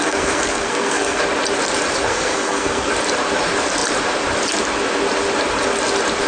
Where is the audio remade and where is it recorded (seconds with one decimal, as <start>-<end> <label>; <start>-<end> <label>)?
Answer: 0.0-1.2 remade; 1.2-2.0 recorded; 2.0-2.9 remade; 2.9-6.3 recorded